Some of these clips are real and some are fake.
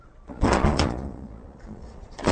fake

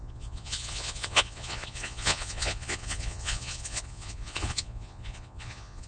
fake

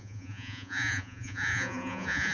fake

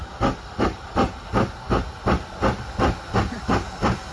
real